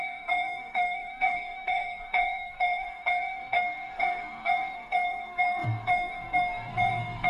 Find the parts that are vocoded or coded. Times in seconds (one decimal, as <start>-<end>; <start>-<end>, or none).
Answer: 0.0-7.3